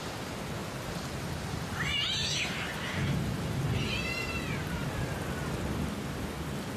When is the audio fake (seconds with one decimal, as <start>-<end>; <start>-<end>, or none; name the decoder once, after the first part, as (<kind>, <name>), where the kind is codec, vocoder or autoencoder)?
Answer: 0.0-0.6 (vocoder, BigVGAN v2); 2.1-6.8